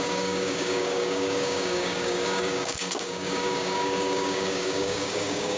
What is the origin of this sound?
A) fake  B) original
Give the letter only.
A